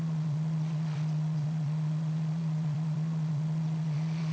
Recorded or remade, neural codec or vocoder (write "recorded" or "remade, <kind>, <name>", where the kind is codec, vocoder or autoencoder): remade, vocoder, Vocos